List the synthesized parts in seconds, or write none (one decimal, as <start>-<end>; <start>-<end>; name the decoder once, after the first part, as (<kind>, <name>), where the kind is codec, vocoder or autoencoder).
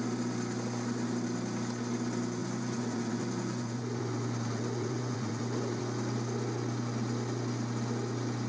2.4-5.8 (vocoder, Vocos)